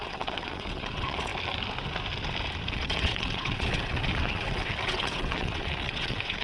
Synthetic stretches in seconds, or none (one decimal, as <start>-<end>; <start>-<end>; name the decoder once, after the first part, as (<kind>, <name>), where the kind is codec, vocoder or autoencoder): 0.0-1.3 (vocoder, WaveNeXt); 2.7-6.4